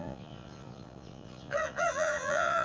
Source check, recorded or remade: remade